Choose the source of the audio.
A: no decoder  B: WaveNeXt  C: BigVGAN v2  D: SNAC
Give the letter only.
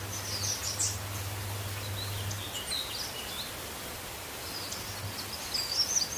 A